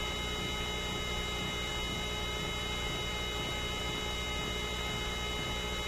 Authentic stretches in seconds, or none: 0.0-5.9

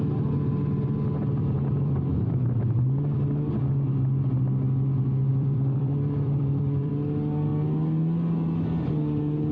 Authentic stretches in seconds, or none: 0.0-1.4; 2.8-5.3; 6.9-9.5

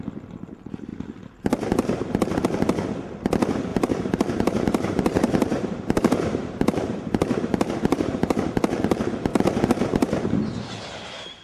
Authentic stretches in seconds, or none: 0.0-3.7; 8.5-9.3; 10.4-11.4

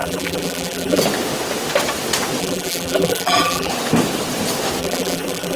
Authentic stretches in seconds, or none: 1.0-2.4; 3.7-4.8

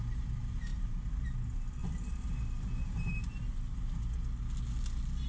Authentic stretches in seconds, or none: 0.0-0.7; 1.2-5.3

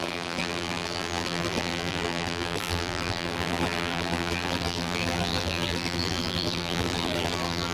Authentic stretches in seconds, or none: none